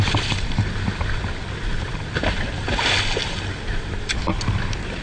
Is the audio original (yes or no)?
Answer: yes